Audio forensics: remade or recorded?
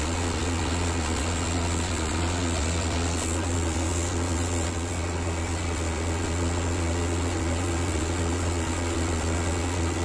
remade